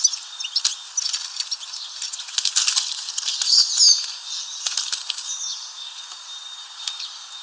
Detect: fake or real real